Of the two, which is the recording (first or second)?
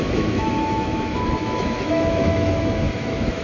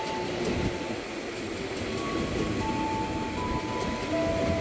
second